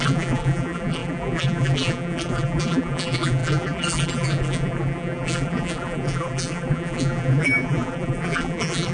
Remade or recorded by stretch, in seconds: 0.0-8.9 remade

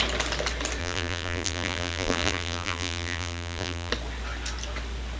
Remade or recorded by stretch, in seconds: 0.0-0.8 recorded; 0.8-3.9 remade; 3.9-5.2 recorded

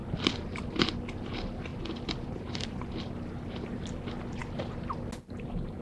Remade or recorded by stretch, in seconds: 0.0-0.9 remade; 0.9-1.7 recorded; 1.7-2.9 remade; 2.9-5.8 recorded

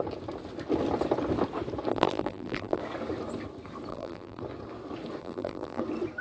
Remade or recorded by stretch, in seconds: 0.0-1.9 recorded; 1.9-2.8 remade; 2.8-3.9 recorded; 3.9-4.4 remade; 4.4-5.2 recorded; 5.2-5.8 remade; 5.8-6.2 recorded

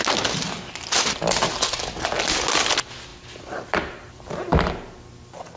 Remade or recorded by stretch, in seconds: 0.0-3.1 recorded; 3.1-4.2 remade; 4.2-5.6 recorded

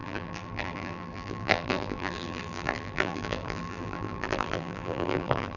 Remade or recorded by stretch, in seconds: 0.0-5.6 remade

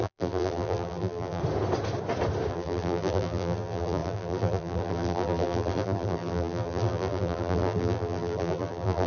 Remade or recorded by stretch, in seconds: 0.0-1.4 remade; 1.4-2.5 recorded; 2.5-9.1 remade